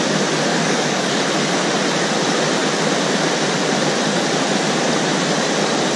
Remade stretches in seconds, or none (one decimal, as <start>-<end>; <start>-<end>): 0.5-1.3